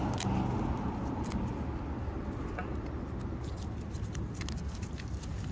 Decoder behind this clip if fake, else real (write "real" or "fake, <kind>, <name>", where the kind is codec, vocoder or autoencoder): real